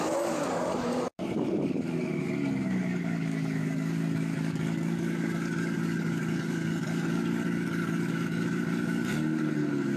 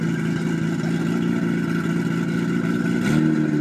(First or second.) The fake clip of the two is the first